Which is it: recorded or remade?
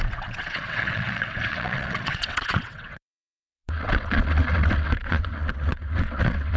remade